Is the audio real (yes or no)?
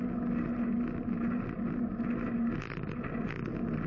yes